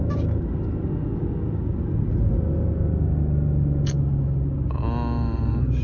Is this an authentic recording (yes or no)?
yes